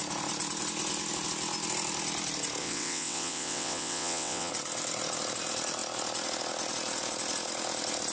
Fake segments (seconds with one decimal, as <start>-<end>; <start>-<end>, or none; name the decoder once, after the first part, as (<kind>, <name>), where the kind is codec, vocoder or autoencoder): 2.6-4.5 (vocoder, WaveNeXt)

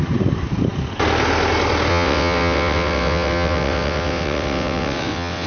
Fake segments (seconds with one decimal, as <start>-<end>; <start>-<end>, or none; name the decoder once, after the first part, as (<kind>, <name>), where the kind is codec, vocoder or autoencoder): 1.9-5.5 (vocoder, WaveNeXt)

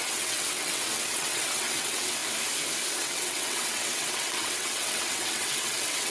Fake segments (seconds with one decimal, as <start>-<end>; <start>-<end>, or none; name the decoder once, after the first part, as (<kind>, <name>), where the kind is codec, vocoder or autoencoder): 0.0-2.2 (vocoder, WaveNeXt); 3.0-6.1

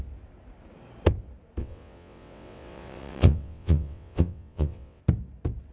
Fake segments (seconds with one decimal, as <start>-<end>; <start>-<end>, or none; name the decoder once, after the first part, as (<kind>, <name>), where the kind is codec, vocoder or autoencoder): 1.6-5.0 (vocoder, WaveNeXt)

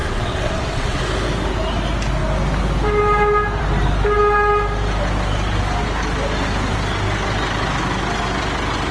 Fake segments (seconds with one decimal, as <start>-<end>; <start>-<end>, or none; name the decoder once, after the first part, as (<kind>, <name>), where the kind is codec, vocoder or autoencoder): 0.0-1.0 (vocoder, WaveNeXt)